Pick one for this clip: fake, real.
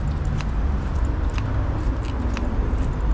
real